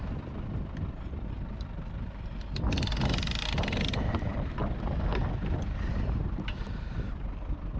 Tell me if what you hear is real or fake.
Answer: fake